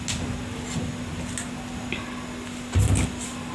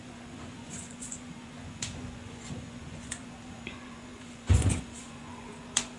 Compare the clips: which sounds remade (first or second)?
second